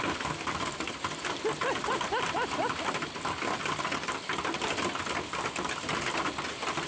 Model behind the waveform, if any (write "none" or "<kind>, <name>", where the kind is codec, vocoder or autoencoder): none